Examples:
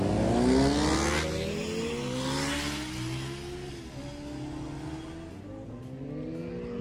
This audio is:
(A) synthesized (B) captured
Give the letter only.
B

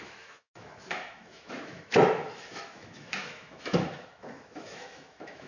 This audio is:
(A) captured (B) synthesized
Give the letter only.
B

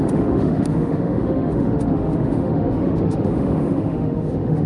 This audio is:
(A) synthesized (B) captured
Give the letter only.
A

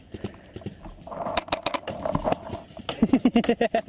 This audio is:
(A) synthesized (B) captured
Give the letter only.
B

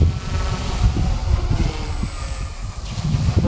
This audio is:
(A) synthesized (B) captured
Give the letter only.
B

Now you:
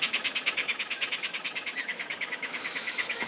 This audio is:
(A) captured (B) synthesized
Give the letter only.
B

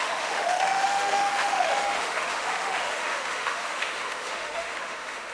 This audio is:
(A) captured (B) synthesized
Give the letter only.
B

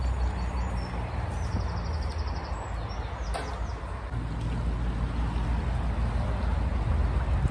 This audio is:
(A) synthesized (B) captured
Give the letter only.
B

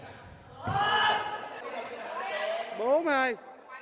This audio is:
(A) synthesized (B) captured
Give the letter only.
B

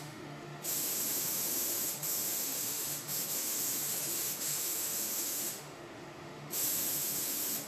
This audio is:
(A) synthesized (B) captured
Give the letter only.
A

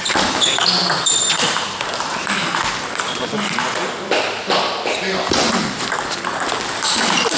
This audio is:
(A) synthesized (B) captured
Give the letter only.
B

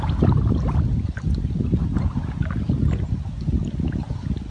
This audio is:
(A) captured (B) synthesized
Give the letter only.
A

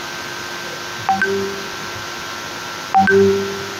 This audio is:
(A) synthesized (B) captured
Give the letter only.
B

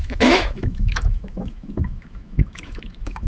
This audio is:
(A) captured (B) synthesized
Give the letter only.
B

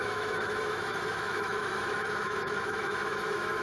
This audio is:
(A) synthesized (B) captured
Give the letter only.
A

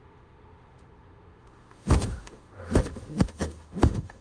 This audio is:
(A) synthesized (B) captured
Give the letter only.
A